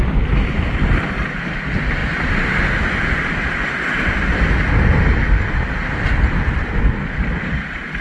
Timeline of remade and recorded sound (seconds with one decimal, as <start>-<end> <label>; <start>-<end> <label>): 0.0-8.0 recorded